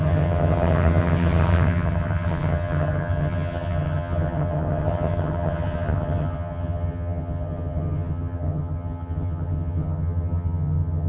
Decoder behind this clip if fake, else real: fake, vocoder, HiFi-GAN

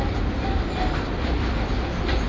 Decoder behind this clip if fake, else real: real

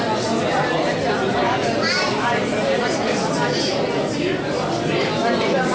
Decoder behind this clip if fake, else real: real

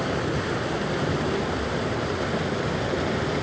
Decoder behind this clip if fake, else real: real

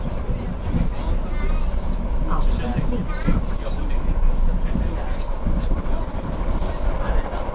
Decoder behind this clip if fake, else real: real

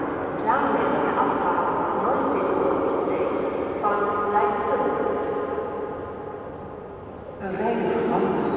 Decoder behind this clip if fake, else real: real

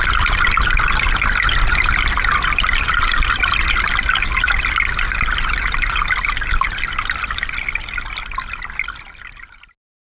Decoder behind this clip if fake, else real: real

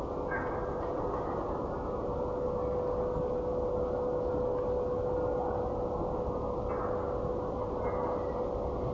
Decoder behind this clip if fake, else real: real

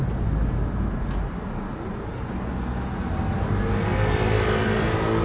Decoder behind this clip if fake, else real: real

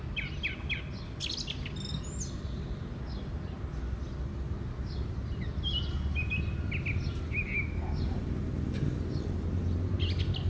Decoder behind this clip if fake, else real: real